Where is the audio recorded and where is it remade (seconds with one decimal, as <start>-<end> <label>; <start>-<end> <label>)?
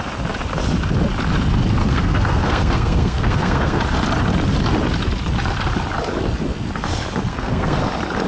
0.0-1.8 recorded; 1.8-3.8 remade; 3.8-7.3 recorded; 7.3-7.8 remade; 7.8-8.3 recorded